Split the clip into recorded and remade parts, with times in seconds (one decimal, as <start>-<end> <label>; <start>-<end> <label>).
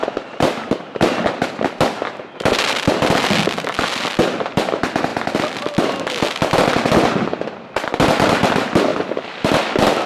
0.0-5.1 recorded; 5.1-6.2 remade; 6.2-8.9 recorded; 8.9-9.4 remade; 9.4-10.1 recorded